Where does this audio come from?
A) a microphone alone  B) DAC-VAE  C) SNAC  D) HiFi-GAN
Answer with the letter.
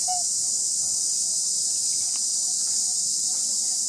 A